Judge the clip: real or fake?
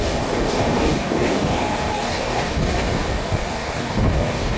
fake